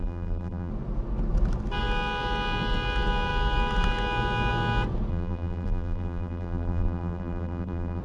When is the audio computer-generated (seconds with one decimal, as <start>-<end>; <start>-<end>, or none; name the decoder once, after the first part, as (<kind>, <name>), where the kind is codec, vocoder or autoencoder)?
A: 0.0-0.7 (vocoder, BigVGAN v2); 5.1-8.0

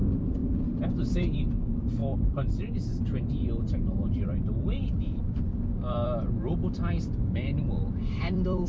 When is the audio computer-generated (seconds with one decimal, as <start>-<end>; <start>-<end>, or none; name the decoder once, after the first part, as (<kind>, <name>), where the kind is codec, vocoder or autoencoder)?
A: 0.0-2.0 (vocoder, BigVGAN v2); 2.6-8.7

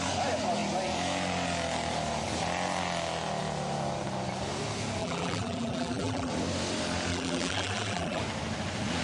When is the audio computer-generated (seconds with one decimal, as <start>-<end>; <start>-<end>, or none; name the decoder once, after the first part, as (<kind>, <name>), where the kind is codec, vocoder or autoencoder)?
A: 5.0-6.3 (vocoder, BigVGAN v2); 7.1-8.2

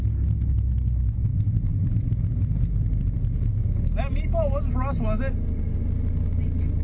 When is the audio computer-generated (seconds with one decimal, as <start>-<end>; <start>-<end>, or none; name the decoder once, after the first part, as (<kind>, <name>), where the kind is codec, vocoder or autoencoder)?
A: 1.3-4.7 (vocoder, BigVGAN v2)

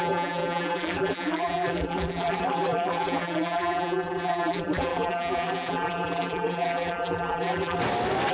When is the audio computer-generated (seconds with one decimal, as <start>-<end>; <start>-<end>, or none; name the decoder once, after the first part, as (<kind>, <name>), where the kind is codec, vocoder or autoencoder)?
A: 0.0-7.8 (vocoder, BigVGAN v2)

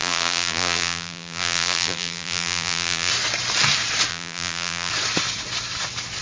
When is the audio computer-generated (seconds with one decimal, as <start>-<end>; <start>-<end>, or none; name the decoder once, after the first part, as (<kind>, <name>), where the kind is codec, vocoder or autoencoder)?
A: 0.0-3.1 (vocoder, BigVGAN v2); 4.1-4.9